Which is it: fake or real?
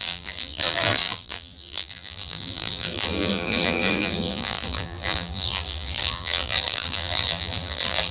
fake